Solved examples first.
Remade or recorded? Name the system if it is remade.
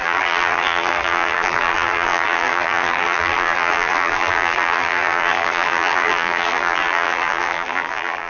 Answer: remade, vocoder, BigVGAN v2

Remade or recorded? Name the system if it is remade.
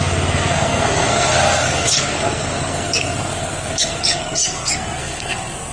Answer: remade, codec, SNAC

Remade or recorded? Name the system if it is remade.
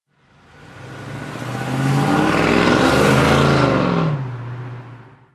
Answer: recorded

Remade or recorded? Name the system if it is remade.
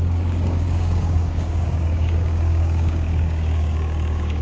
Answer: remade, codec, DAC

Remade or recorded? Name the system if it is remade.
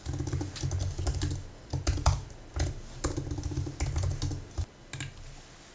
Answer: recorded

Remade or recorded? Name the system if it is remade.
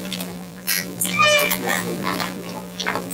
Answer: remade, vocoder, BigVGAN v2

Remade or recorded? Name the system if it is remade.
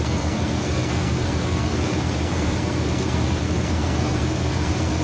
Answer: remade, codec, SNAC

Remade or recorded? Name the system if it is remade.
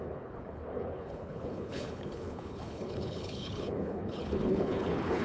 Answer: remade, codec, HILCodec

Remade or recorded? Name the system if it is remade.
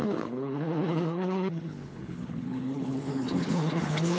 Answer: remade, codec, HILCodec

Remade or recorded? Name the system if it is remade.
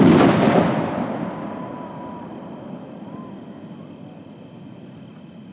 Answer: recorded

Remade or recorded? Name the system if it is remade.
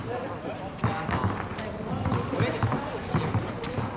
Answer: recorded